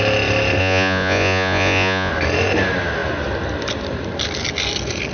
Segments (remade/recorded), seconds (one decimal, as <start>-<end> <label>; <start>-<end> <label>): 0.0-0.6 recorded; 0.6-2.1 remade; 2.1-5.1 recorded

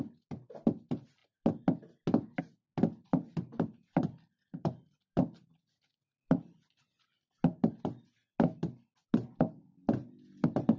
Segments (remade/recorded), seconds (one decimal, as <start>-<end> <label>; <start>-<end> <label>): 0.0-3.5 recorded; 3.5-5.1 remade; 5.1-10.8 recorded